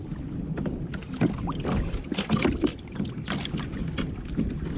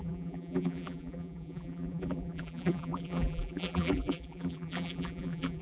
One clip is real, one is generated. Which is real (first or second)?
first